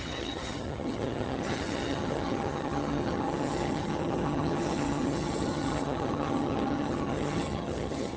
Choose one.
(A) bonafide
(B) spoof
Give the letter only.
B